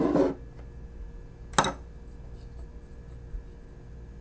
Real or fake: real